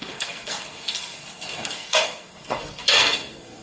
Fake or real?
fake